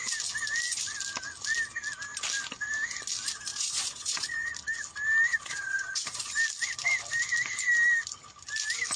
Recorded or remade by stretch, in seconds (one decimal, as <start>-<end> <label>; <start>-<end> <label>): 0.0-3.5 recorded; 3.5-4.5 remade; 4.5-5.3 recorded; 5.3-6.3 remade; 6.3-9.0 recorded